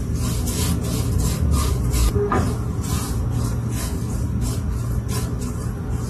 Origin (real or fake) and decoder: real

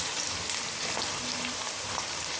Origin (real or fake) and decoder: real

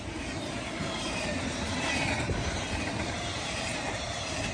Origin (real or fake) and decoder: fake, vocoder, BigVGAN v2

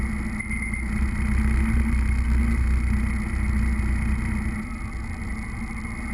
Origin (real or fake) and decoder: real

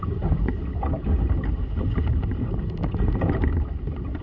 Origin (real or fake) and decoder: real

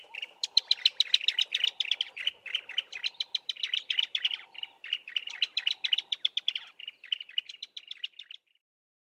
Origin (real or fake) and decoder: fake, vocoder, BigVGAN v2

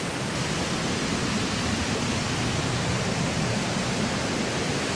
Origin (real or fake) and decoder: real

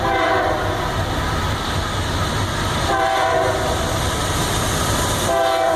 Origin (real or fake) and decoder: fake, vocoder, BigVGAN v2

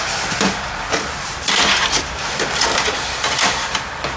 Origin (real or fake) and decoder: fake, vocoder, BigVGAN v2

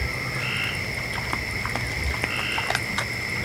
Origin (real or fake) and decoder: real